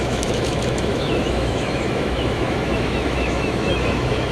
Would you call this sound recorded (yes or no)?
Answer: no